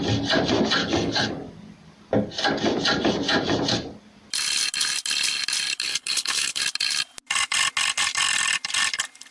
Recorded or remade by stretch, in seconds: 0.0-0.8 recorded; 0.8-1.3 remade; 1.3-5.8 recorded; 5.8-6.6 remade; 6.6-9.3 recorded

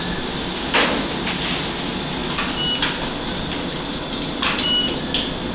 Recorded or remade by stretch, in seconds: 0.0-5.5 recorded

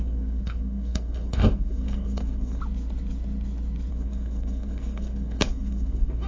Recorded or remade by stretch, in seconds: 0.0-2.6 remade; 2.6-3.9 recorded; 3.9-6.3 remade

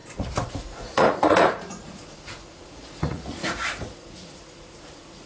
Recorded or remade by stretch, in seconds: 0.0-5.3 remade

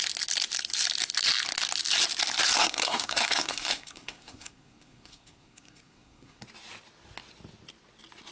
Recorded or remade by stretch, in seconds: 0.0-2.6 recorded; 2.6-6.4 remade; 6.4-8.3 recorded

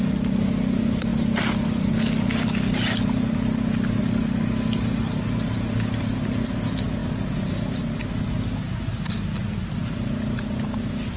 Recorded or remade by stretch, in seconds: 0.0-11.2 recorded

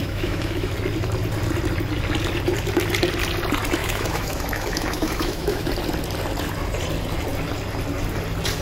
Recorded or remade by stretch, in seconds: 0.0-0.7 remade; 0.7-3.8 recorded; 3.8-5.7 remade; 5.7-8.6 recorded